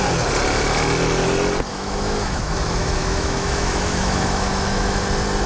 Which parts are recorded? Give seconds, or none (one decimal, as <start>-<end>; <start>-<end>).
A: 0.0-1.7; 5.0-5.5